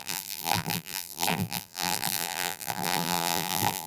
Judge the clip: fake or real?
fake